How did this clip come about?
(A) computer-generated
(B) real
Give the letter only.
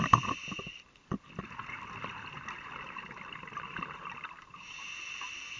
B